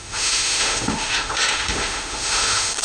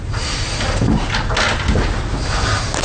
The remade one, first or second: first